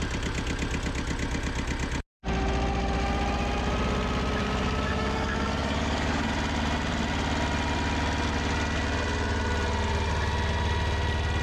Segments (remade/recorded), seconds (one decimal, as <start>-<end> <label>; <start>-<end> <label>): 0.0-4.4 recorded; 4.4-6.3 remade; 6.3-11.4 recorded